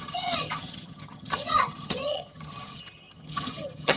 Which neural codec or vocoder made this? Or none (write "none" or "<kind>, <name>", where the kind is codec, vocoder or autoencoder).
vocoder, HiFi-GAN